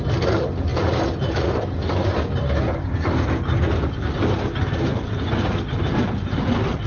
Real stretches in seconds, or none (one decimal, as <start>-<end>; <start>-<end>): 0.0-6.9